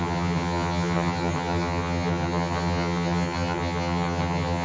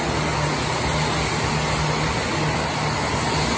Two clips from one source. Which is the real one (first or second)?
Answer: second